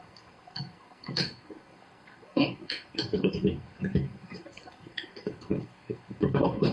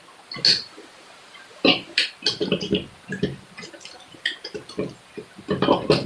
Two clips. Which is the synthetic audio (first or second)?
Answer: first